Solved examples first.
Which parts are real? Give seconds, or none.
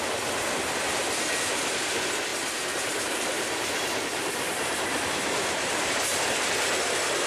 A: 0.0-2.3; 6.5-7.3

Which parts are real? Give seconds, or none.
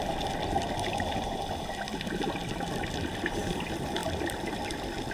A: 0.0-4.0; 4.6-5.1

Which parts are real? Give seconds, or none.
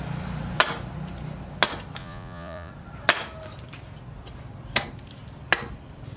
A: 0.0-2.0; 2.7-6.2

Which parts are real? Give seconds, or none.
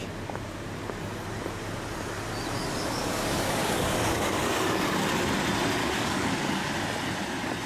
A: 0.0-2.6; 5.1-5.8; 6.7-7.7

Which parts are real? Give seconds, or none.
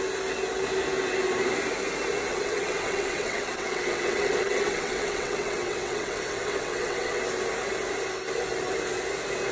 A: 0.0-2.3; 7.2-9.5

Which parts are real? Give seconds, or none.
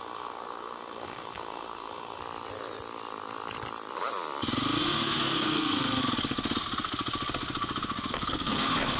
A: 2.2-4.8; 6.0-8.1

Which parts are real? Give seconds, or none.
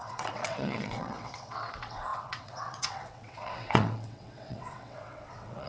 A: none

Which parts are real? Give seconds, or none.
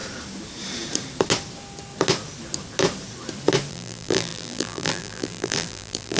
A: 0.0-3.7